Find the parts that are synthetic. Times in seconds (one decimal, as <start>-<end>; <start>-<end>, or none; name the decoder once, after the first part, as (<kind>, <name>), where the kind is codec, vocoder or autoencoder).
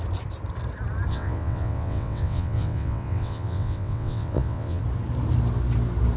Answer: 1.1-4.8 (vocoder, WaveNeXt)